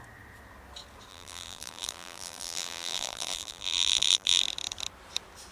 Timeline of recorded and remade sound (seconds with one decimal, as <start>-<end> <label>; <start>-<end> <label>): 0.0-1.1 recorded; 1.1-4.4 remade; 4.4-5.5 recorded